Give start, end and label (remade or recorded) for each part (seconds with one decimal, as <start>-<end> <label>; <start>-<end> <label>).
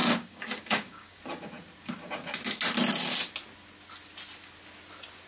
0.0-1.2 remade; 1.2-5.3 recorded